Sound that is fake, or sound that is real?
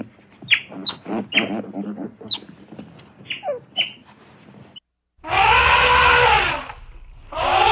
real